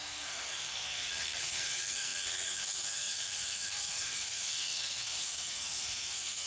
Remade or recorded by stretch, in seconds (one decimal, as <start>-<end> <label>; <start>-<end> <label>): 0.0-6.5 remade